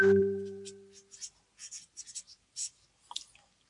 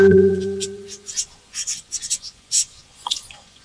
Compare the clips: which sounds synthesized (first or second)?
second